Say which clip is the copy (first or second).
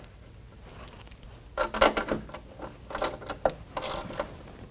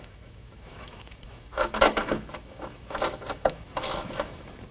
second